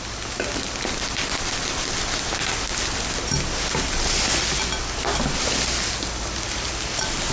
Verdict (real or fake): real